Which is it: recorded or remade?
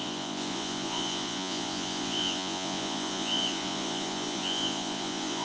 remade